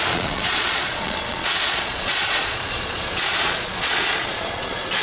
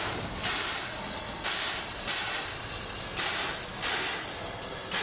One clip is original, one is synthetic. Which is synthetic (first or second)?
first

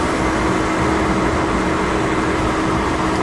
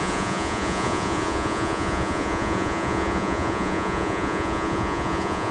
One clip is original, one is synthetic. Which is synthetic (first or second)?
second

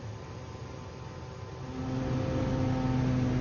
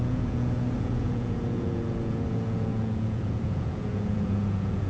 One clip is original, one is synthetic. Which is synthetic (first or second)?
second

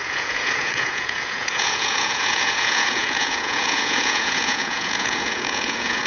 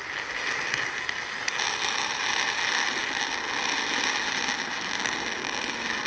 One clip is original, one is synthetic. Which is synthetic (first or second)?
first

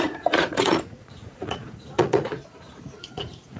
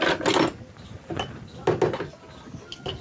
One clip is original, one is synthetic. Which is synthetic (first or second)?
first